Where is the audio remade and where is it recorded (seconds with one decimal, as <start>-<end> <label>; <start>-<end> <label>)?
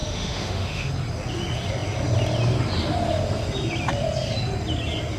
0.0-0.9 remade; 0.9-5.2 recorded